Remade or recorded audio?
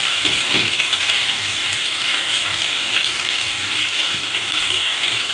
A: remade